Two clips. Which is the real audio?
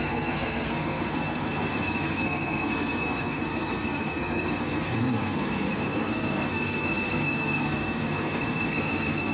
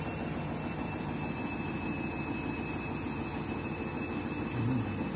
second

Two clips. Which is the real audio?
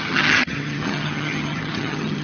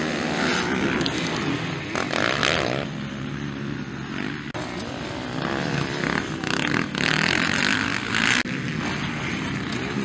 second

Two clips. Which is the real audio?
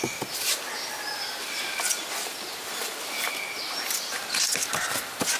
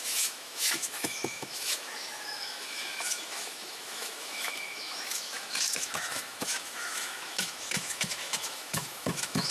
first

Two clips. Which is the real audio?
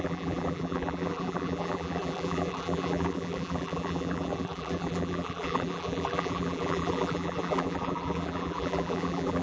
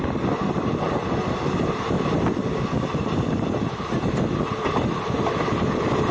second